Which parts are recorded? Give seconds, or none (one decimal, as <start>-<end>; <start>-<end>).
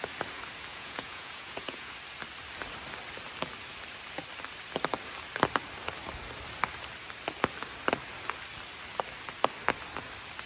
0.0-0.7; 1.9-10.5